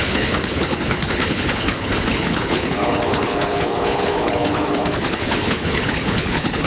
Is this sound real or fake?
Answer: fake